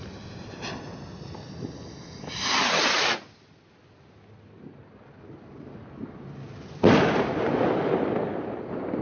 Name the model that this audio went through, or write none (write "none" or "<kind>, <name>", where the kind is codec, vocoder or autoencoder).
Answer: none